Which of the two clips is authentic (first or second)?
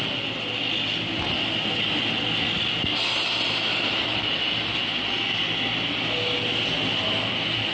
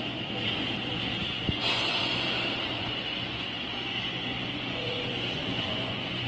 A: first